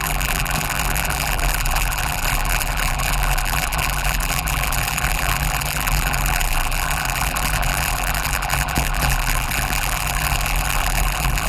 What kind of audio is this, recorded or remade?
remade